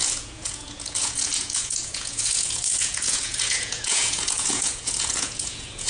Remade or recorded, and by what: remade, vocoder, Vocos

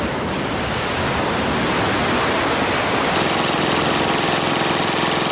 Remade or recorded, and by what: recorded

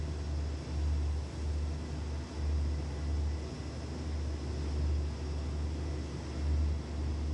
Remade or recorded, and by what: recorded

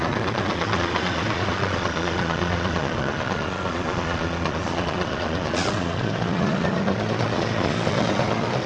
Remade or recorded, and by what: remade, vocoder, Vocos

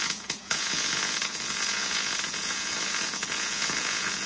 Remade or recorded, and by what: remade, vocoder, Vocos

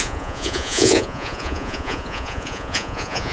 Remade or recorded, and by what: remade, vocoder, Vocos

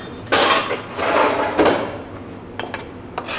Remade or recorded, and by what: recorded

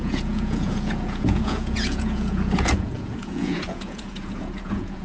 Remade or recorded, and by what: remade, vocoder, Vocos